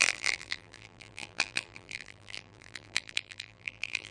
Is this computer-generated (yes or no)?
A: yes